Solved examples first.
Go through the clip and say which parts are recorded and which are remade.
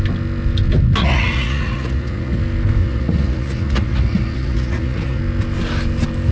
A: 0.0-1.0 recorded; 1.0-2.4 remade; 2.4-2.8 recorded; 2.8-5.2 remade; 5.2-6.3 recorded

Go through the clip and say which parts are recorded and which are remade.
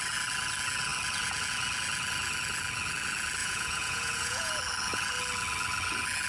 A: 0.0-3.4 recorded; 3.4-4.5 remade; 4.5-6.3 recorded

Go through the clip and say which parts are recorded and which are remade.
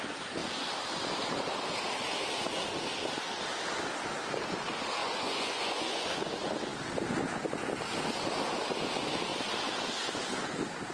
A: 0.0-5.0 recorded; 5.0-6.2 remade; 6.2-10.9 recorded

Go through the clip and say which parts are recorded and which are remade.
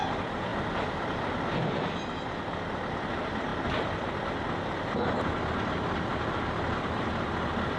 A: 0.0-7.8 recorded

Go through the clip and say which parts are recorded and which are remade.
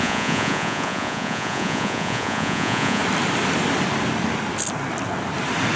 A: 0.0-3.0 remade; 3.0-5.8 recorded